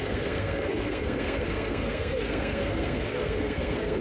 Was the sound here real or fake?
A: fake